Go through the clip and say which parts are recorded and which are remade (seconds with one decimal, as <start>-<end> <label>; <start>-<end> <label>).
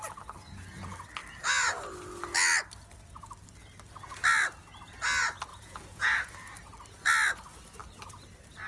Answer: 0.0-5.5 recorded; 5.5-6.5 remade; 6.5-8.7 recorded